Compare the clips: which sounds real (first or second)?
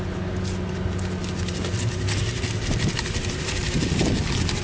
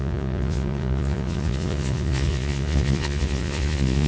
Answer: first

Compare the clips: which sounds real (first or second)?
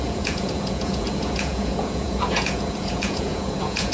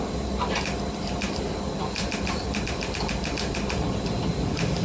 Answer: second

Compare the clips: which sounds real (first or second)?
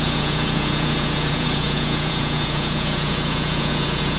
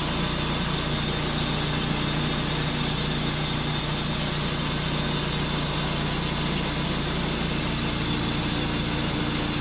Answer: second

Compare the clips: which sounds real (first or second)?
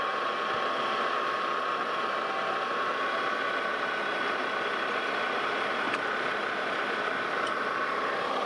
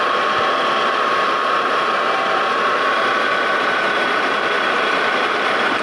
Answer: first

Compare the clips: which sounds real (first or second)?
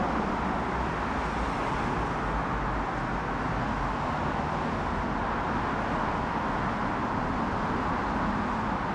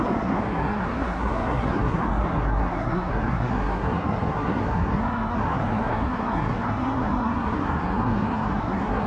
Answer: first